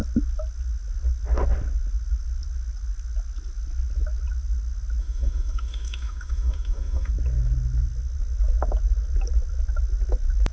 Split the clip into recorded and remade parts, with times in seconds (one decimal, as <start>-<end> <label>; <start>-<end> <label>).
0.0-5.0 recorded; 5.0-7.1 remade; 7.1-10.5 recorded

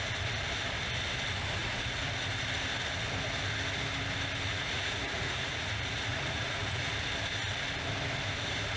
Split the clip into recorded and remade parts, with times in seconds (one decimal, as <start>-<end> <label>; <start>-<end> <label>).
0.0-1.6 recorded; 1.6-2.1 remade; 2.1-4.5 recorded; 4.5-6.8 remade; 6.8-8.8 recorded

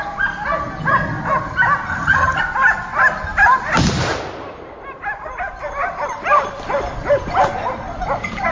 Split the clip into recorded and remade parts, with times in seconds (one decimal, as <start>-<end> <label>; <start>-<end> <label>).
0.0-1.9 recorded; 1.9-2.4 remade; 2.4-8.5 recorded

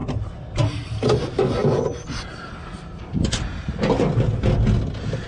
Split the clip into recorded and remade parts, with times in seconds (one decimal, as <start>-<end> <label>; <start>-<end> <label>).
0.0-5.3 recorded

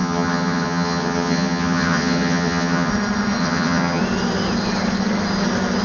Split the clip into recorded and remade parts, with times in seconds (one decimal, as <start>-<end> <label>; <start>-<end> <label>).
0.0-2.9 remade; 2.9-3.4 recorded; 3.4-4.0 remade; 4.0-5.8 recorded

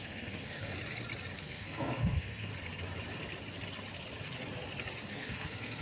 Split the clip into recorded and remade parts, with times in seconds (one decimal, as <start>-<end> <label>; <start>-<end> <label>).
0.0-0.7 remade; 0.7-1.4 recorded; 1.4-2.5 remade; 2.5-5.1 recorded; 5.1-5.8 remade

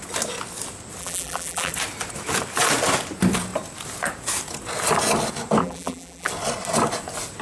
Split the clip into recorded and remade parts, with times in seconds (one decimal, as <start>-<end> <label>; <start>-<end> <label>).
0.0-1.0 recorded; 1.0-1.7 remade; 1.7-5.6 recorded; 5.6-6.3 remade; 6.3-7.4 recorded

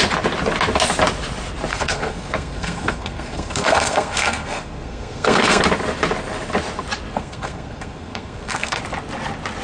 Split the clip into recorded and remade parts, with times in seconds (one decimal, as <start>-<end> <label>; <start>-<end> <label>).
0.0-1.7 recorded; 1.7-5.6 remade; 5.6-7.1 recorded; 7.1-8.8 remade; 8.8-9.6 recorded